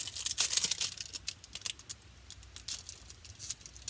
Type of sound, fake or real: real